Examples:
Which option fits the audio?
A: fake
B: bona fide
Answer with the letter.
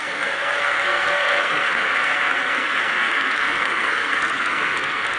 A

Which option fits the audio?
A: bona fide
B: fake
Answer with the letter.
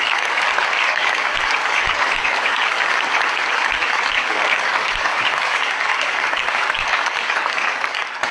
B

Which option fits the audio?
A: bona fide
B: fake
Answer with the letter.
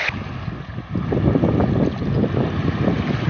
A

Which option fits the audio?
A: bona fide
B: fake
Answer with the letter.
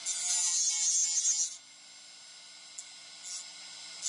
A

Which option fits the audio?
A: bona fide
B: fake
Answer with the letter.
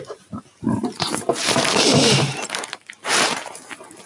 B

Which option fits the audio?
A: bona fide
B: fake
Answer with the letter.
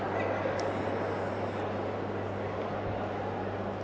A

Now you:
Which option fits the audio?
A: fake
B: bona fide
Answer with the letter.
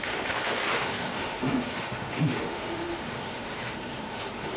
A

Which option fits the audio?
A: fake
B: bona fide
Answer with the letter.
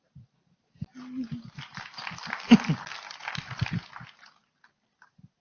B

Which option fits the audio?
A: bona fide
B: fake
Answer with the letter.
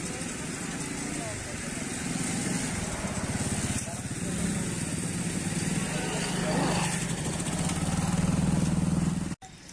A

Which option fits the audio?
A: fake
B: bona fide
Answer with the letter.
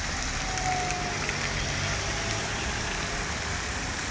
B